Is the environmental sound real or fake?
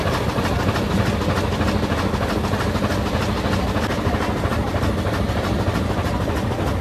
real